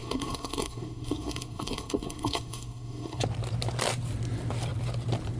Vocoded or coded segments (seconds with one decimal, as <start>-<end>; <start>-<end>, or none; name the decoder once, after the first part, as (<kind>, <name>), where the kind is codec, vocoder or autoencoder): 0.0-3.2 (codec, SNAC)